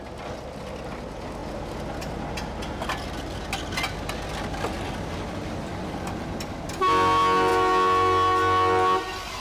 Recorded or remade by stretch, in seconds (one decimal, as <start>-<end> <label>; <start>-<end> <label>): 0.0-9.4 recorded